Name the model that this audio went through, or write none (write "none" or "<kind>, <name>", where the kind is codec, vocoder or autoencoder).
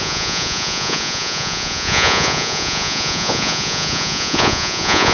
vocoder, Vocos